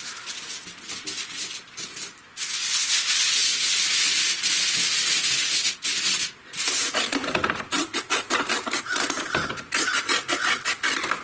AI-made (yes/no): yes